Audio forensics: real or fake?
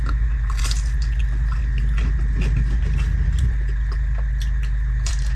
real